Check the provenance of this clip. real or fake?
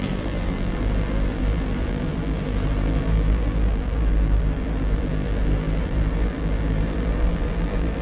fake